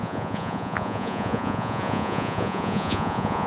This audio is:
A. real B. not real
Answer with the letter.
B